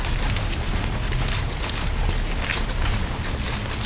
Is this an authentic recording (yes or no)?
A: yes